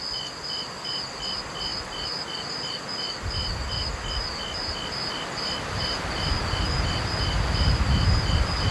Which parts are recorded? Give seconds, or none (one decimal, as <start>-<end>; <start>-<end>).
0.0-8.7

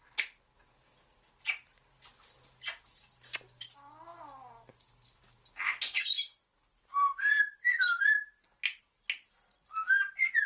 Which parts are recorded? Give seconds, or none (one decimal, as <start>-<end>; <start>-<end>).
0.0-10.5